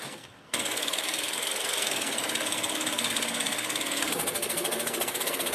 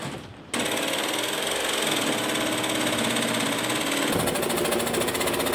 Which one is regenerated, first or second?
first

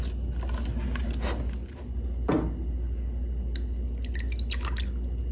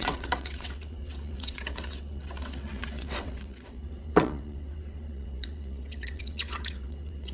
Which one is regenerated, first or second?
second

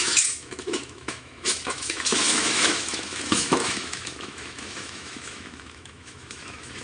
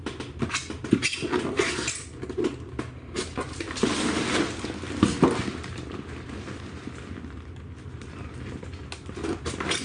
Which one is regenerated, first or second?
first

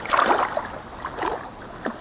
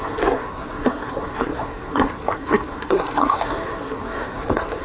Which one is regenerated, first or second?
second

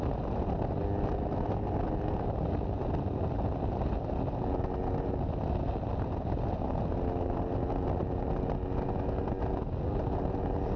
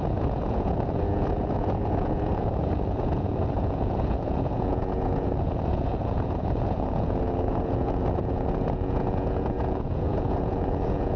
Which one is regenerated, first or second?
second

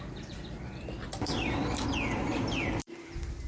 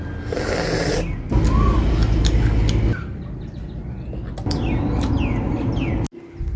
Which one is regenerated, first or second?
first